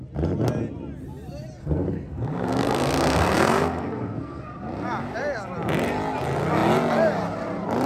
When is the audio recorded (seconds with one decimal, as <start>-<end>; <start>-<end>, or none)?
0.0-1.6; 4.4-7.9